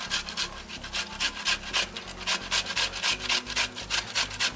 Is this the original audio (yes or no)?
yes